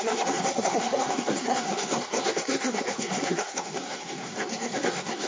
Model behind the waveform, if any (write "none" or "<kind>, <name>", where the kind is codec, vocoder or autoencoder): codec, SNAC